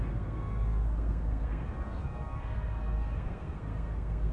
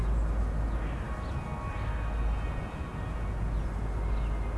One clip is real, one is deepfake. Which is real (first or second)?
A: second